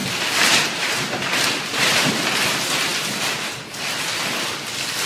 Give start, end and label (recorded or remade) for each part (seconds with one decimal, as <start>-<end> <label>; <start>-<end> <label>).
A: 0.0-2.1 remade; 2.1-5.1 recorded